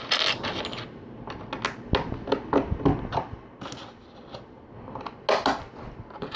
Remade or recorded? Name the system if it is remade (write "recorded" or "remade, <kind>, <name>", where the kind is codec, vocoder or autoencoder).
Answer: recorded